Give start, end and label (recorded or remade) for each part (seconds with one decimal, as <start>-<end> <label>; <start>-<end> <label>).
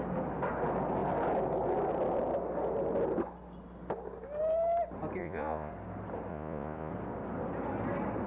0.0-5.2 recorded; 5.2-5.7 remade; 5.7-6.3 recorded; 6.3-6.9 remade; 6.9-8.3 recorded